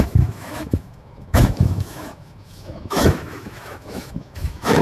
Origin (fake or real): fake